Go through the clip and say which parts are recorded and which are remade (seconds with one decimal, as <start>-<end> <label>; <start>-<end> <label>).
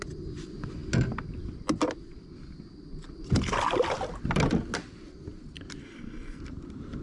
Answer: 0.0-5.8 recorded; 5.8-6.4 remade; 6.4-7.0 recorded